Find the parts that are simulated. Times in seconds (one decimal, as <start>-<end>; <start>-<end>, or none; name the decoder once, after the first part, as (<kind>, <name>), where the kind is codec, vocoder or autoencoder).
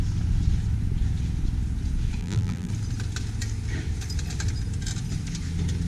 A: 2.2-2.7 (vocoder, BigVGAN v2)